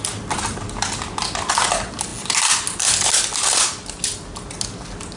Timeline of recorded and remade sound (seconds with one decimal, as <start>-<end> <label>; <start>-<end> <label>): 0.0-5.2 recorded